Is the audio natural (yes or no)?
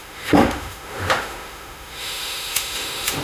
no